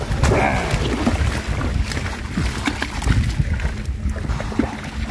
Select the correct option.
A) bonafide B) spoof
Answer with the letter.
A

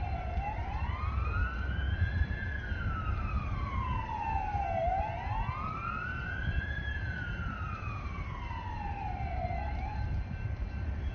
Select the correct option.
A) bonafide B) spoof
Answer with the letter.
B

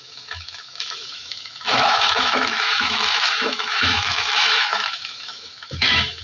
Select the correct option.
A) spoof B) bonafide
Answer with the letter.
A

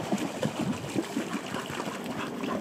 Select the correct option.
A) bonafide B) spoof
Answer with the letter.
A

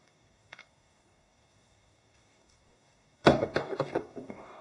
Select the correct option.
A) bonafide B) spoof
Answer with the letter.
B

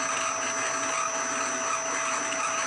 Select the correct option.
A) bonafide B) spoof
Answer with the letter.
A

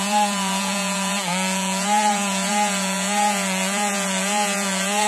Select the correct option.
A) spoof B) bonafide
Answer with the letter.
A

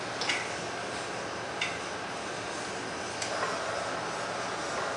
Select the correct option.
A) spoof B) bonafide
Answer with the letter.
B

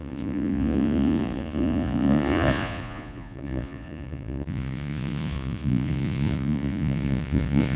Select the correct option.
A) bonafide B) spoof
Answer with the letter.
B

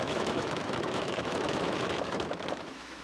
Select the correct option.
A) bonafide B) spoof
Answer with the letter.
B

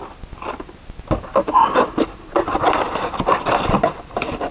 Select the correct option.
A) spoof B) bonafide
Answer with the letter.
B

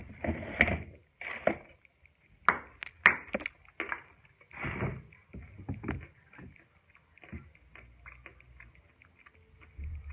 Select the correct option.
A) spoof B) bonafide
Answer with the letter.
B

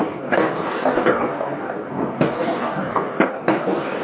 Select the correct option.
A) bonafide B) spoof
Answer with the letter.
B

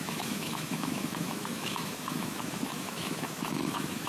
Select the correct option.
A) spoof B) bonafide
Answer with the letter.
A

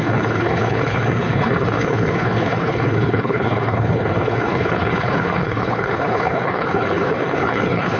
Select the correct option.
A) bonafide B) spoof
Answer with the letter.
B